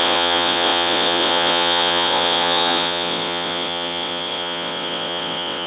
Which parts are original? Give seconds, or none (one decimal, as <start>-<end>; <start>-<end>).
none